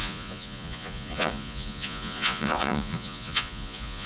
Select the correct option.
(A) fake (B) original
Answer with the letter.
A